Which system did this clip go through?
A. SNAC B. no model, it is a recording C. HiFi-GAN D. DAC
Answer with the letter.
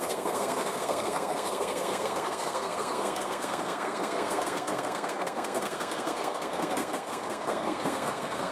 A